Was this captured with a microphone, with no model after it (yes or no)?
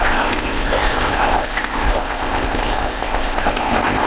no